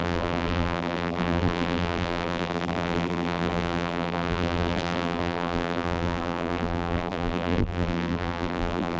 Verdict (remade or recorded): remade